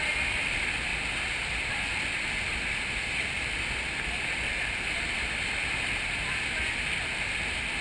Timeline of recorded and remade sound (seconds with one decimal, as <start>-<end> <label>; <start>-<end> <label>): 0.0-7.8 recorded